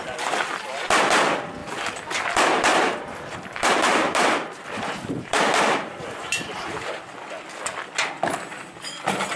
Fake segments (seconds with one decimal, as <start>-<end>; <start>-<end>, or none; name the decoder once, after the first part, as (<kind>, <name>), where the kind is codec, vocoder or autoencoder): 2.7-6.9 (vocoder, BigVGAN v2)